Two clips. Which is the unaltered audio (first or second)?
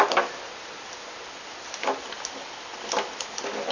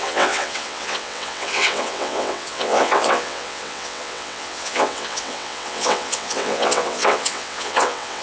first